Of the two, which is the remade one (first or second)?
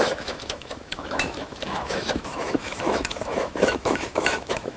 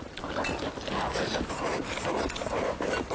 first